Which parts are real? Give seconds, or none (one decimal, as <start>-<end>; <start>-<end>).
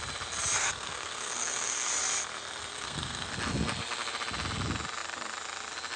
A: 0.0-0.6; 1.9-2.7; 3.3-6.0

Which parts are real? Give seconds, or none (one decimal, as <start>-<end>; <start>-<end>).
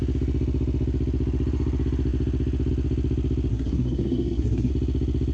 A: 0.0-3.5; 4.7-5.3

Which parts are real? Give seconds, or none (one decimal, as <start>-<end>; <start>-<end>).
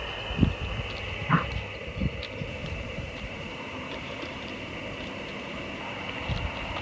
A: 0.0-2.6; 4.5-6.8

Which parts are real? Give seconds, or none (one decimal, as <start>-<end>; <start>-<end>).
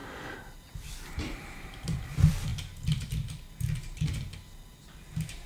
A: 0.0-0.9; 2.5-5.0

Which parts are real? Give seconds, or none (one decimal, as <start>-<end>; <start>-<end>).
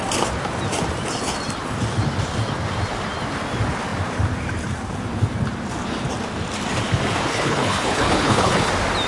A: 0.0-7.3; 8.7-9.1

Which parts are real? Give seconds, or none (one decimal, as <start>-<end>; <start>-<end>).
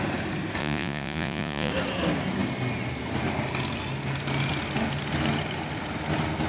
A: 0.0-0.6; 1.7-6.5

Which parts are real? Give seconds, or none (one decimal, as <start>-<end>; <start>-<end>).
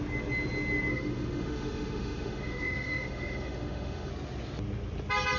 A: 0.0-0.9; 4.1-5.4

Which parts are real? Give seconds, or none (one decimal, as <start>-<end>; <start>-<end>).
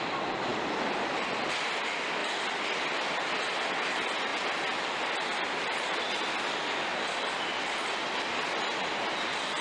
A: 0.0-6.9; 7.9-9.6